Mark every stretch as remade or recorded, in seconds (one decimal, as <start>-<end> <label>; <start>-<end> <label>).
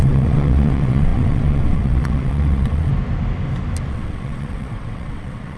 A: 0.0-2.9 remade; 2.9-3.9 recorded; 3.9-5.6 remade